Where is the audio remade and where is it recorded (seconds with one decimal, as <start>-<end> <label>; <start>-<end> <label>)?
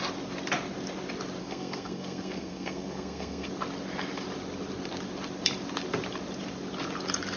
0.0-1.4 recorded; 1.4-3.5 remade; 3.5-7.4 recorded